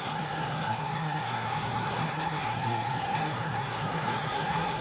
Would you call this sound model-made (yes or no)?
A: yes